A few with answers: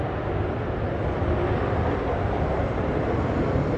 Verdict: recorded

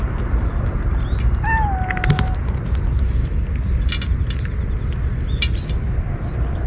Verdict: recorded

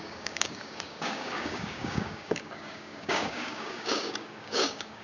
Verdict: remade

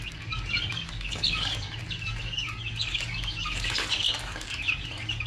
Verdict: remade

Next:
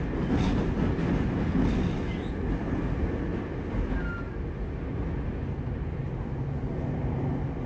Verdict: recorded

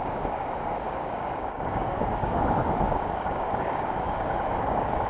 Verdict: remade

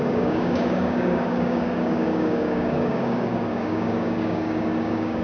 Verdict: remade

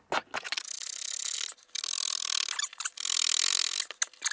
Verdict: recorded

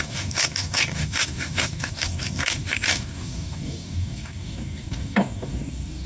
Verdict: remade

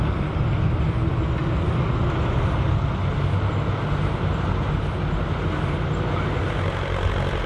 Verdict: recorded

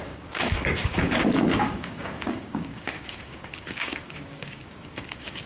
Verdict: remade